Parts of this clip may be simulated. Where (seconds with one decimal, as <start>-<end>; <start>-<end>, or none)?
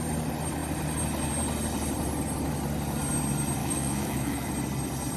3.6-4.5